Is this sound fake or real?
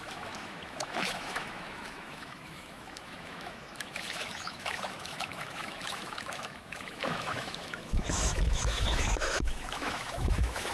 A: fake